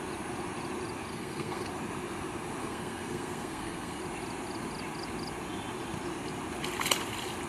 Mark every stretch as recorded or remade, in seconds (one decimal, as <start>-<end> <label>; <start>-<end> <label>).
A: 0.0-1.1 recorded; 1.1-1.7 remade; 1.7-2.6 recorded; 2.6-4.0 remade; 4.0-7.5 recorded